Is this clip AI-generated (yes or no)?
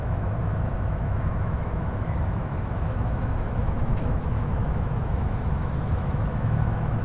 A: yes